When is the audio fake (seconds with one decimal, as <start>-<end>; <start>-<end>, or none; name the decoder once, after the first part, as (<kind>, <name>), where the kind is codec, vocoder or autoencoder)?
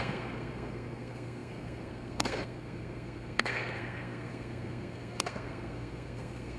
0.0-6.6 (codec, SNAC)